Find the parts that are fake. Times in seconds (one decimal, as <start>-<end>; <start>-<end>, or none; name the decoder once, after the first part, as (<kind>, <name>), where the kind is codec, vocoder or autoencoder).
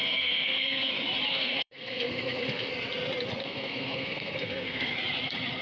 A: 0.0-0.9 (codec, SNAC); 1.3-2.7; 3.4-4.9